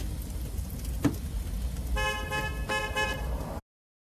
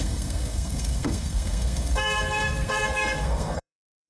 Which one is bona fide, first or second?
first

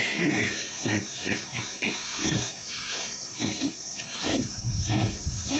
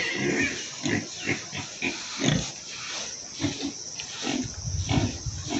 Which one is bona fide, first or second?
second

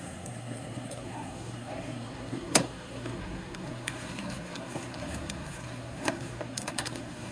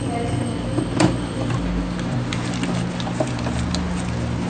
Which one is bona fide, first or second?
second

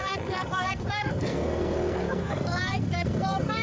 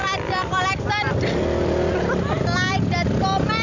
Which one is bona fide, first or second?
second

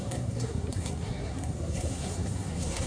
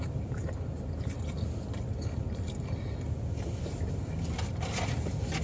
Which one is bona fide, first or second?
second